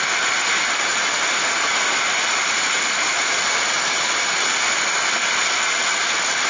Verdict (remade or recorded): recorded